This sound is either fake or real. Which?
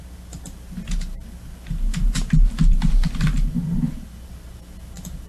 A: real